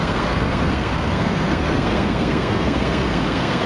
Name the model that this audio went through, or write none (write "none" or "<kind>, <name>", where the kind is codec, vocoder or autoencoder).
codec, SNAC